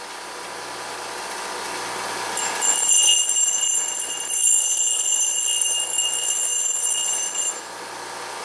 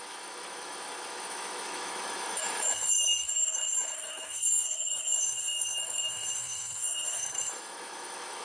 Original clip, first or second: first